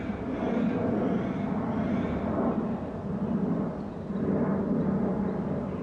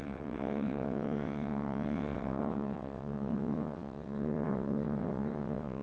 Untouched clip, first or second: first